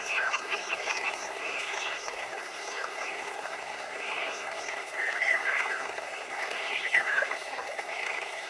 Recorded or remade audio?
remade